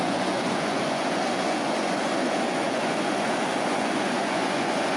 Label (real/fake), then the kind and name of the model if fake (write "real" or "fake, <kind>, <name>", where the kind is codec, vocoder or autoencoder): fake, vocoder, Vocos